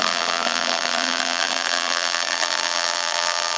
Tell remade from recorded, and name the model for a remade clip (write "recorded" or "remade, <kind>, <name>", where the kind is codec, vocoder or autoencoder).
remade, vocoder, BigVGAN v2